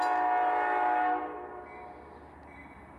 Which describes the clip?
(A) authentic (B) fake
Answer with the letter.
A